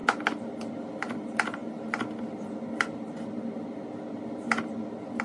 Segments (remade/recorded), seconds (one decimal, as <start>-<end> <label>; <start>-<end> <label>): 0.0-5.2 recorded